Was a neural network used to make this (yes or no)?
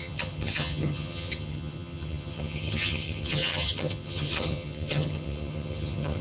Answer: yes